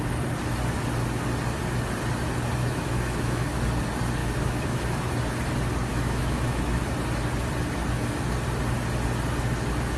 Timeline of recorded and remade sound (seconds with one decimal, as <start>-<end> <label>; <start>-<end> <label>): 0.0-2.6 recorded; 2.6-3.6 remade; 3.6-4.2 recorded; 4.2-5.1 remade; 5.1-5.9 recorded; 5.9-6.8 remade; 6.8-10.0 recorded